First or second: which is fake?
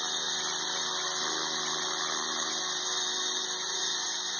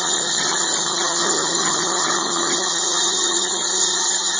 second